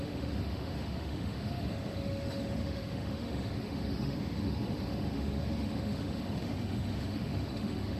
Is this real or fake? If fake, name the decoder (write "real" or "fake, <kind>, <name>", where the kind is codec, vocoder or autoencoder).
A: fake, autoencoder, DAC-VAE